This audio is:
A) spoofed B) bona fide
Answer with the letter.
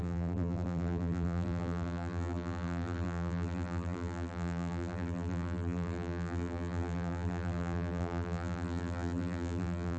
A